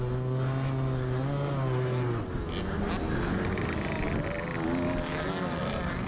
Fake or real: real